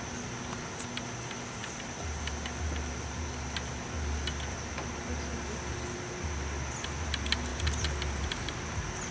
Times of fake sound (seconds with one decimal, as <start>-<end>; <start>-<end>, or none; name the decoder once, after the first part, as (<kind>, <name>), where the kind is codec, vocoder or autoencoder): none